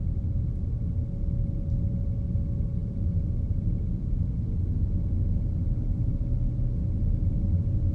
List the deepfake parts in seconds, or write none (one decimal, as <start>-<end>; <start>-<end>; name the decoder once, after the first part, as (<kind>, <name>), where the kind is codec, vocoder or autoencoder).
none

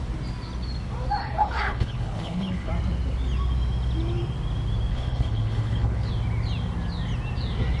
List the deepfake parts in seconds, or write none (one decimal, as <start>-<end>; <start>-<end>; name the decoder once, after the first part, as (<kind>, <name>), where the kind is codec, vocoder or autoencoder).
1.2-2.7 (codec, HILCodec); 4.9-6.1

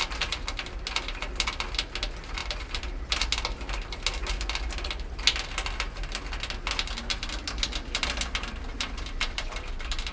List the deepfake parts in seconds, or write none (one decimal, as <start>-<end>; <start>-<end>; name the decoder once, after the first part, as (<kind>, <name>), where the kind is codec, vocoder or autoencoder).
none